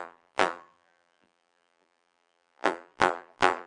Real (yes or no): no